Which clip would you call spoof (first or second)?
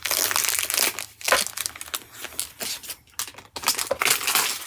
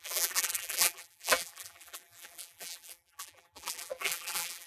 second